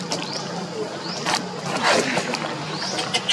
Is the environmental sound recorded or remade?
recorded